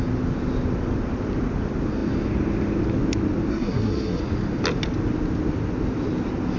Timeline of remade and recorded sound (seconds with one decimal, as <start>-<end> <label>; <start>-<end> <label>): 0.0-3.5 recorded; 3.5-4.2 remade; 4.2-6.6 recorded